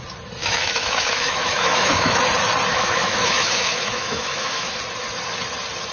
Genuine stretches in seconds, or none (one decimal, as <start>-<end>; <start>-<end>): 0.0-0.4; 2.2-2.7; 4.8-5.9